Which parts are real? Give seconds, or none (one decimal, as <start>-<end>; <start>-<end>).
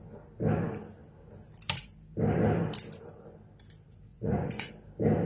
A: 0.0-4.1; 4.7-5.3